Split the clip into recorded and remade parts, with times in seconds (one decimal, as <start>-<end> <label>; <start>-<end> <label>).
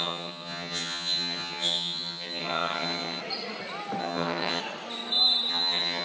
0.0-3.2 remade; 3.2-4.0 recorded; 4.0-4.6 remade; 4.6-5.5 recorded; 5.5-6.0 remade